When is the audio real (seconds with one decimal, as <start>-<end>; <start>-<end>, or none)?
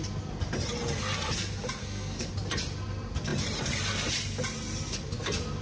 0.0-1.8; 2.3-5.6